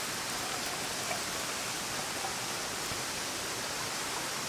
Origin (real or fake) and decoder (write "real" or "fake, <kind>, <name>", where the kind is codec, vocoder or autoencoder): real